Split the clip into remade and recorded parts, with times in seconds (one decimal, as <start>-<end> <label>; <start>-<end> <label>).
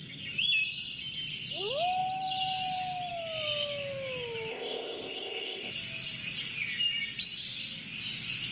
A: 0.0-4.5 recorded; 4.5-5.7 remade; 5.7-8.5 recorded